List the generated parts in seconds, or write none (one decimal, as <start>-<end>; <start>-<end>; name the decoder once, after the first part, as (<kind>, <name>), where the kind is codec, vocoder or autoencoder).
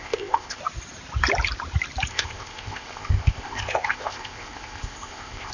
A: 0.0-0.6 (codec, ZipCodec); 2.1-5.5